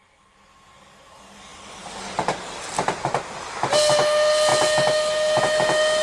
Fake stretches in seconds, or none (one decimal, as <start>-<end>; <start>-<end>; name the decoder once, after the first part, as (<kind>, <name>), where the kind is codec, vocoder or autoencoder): none